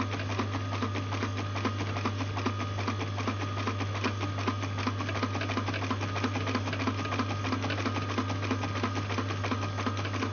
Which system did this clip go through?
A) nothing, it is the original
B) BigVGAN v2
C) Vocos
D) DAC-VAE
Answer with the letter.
A